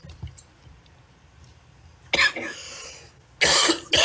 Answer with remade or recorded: recorded